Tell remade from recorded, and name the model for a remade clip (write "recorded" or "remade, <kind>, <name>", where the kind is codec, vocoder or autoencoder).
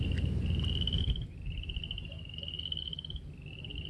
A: recorded